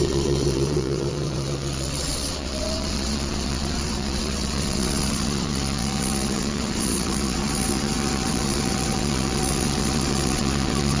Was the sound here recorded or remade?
remade